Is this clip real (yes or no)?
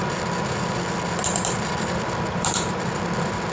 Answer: no